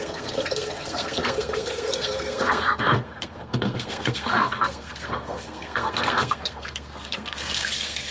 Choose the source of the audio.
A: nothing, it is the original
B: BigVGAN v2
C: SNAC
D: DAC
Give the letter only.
C